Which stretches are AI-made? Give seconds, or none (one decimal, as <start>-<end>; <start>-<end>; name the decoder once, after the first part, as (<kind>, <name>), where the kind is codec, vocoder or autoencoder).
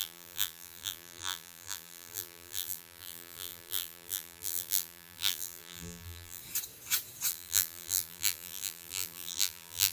0.0-6.4 (vocoder, BigVGAN v2); 7.3-9.9